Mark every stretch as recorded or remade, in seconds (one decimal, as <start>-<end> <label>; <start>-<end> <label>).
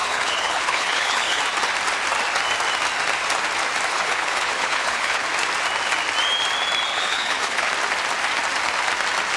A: 0.0-1.4 remade; 1.4-3.9 recorded; 3.9-5.2 remade; 5.2-6.9 recorded; 6.9-7.7 remade; 7.7-9.4 recorded